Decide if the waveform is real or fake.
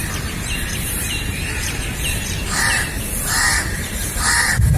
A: fake